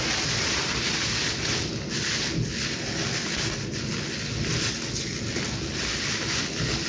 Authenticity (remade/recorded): recorded